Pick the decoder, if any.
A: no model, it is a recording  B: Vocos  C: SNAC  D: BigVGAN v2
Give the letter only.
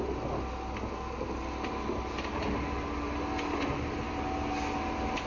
A